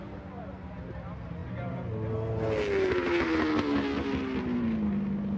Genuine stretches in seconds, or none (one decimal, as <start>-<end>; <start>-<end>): 0.0-5.4